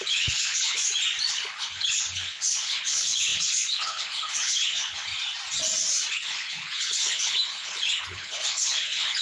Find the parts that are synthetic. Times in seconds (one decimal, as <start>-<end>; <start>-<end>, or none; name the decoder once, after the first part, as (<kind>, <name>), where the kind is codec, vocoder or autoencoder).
0.0-0.8 (codec, HILCodec); 1.3-5.1; 6.1-9.2